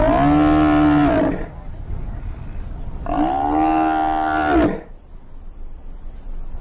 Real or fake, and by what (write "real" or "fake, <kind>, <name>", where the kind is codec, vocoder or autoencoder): real